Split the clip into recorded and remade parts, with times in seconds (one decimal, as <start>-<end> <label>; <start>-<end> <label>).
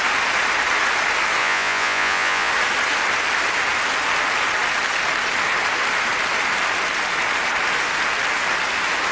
0.0-1.4 recorded; 1.4-2.5 remade; 2.5-9.1 recorded